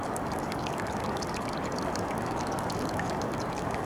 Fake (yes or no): yes